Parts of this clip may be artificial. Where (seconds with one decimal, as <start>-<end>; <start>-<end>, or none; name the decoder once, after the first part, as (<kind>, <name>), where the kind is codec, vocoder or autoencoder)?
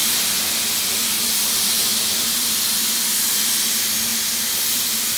1.3-5.2 (vocoder, BigVGAN v2)